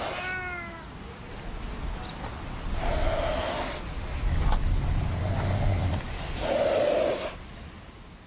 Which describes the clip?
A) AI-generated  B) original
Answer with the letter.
B